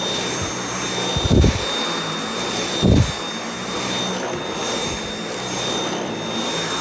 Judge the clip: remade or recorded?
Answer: recorded